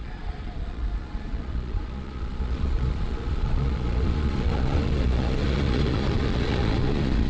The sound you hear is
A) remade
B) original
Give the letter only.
A